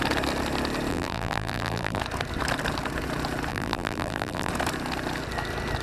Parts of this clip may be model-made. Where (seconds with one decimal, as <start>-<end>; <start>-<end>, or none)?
0.9-2.0; 3.5-4.5